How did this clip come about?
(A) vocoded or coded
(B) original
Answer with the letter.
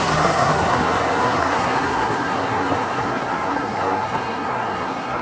A